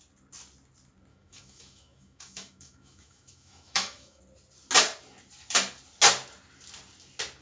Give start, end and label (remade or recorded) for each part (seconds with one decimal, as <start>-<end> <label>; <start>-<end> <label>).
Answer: 0.0-1.1 recorded; 1.1-4.2 remade; 4.2-7.4 recorded